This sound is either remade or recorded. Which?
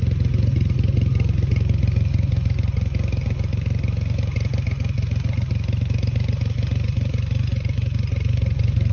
recorded